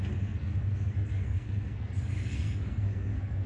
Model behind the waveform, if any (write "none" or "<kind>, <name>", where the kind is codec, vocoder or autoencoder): codec, SNAC